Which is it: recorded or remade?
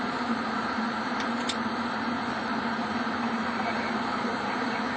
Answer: remade